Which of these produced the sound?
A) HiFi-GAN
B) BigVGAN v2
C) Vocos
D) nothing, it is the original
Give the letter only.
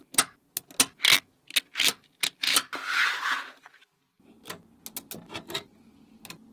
D